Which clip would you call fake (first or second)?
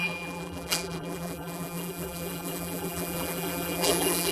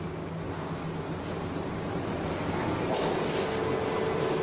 first